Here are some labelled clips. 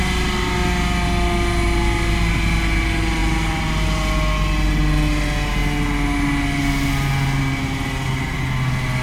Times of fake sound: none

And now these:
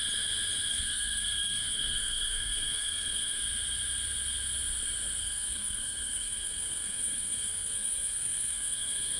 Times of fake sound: 0.7-3.4 (codec, SNAC); 5.2-9.2

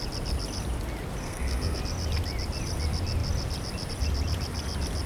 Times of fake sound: 1.2-1.8 (codec, SNAC)

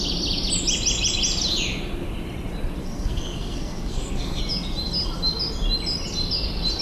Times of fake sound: 2.8-4.4 (codec, SNAC)

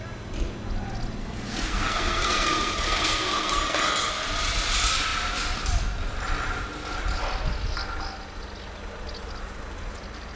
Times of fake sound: 1.2-4.1 (codec, SNAC)

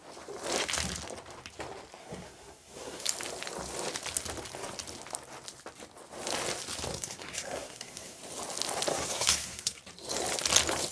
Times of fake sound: 2.0-3.1 (codec, SNAC); 6.9-8.2; 8.9-9.8